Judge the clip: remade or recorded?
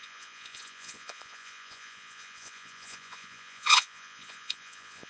remade